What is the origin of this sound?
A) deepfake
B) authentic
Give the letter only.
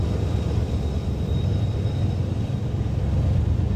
B